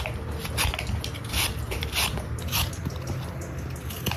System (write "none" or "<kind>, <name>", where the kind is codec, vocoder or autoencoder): none